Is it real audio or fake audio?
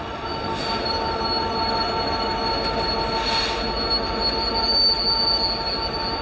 real